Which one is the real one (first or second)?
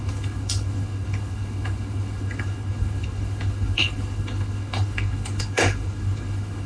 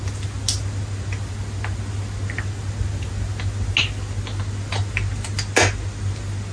second